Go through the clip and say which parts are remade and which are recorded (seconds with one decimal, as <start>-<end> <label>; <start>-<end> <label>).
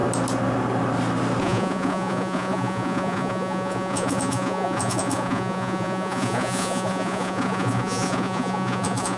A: 0.0-1.4 recorded; 1.4-9.2 remade